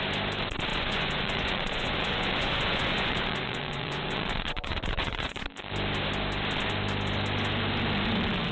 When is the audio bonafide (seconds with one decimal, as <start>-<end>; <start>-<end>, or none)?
0.0-0.7; 5.4-8.5